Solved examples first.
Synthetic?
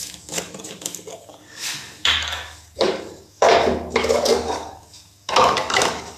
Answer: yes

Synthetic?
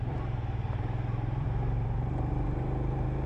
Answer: yes